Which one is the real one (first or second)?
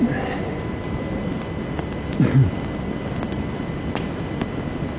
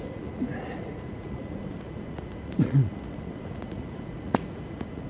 first